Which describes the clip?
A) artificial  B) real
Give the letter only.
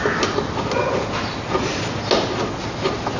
B